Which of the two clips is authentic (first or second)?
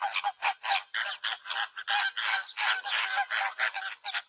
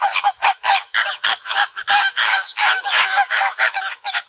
first